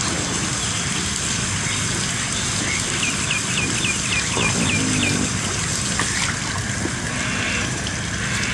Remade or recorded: recorded